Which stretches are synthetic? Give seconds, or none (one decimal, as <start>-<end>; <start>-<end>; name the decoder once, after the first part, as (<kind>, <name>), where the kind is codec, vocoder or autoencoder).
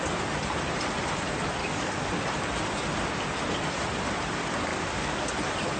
1.6-2.1 (codec, DAC); 4.7-5.3